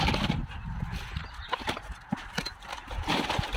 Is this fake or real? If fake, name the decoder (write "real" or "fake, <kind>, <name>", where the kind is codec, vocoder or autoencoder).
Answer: fake, vocoder, BigVGAN v2